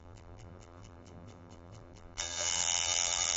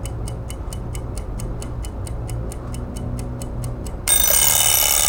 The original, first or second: second